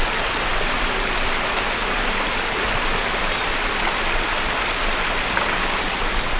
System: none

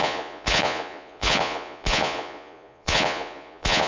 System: vocoder, Vocos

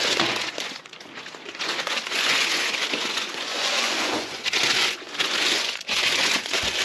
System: vocoder, Vocos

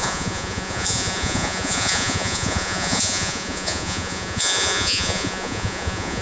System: vocoder, Vocos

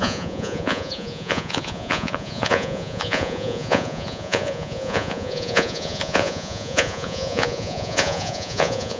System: vocoder, Vocos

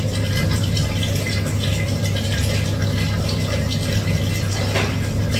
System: none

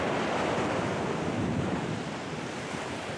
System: none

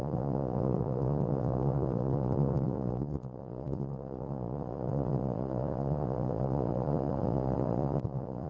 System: vocoder, Vocos